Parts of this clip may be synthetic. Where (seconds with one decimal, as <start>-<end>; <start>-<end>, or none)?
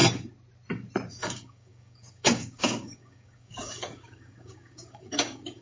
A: 1.1-5.6